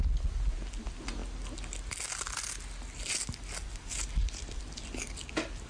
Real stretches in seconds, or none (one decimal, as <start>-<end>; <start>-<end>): 0.0-5.7